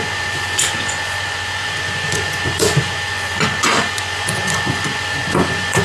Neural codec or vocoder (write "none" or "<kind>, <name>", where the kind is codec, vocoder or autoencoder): vocoder, Vocos